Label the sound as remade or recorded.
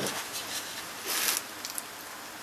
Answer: recorded